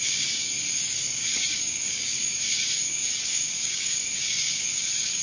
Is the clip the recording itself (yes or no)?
no